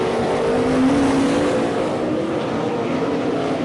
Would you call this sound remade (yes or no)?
no